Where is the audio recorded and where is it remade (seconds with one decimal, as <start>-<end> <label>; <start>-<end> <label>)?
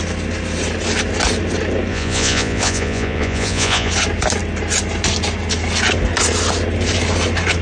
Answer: 0.0-1.9 recorded; 1.9-3.9 remade; 3.9-7.6 recorded